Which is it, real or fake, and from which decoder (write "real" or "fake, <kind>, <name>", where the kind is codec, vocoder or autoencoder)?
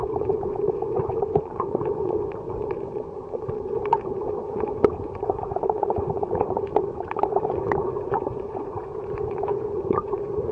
fake, vocoder, Vocos